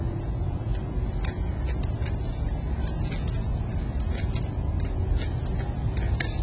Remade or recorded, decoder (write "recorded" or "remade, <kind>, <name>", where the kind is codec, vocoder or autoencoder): recorded